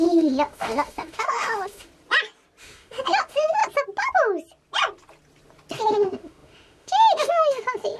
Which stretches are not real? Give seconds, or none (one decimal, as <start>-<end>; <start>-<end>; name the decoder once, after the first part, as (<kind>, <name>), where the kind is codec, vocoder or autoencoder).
0.0-1.9 (autoencoder, DAC-VAE); 2.6-3.6; 5.8-8.0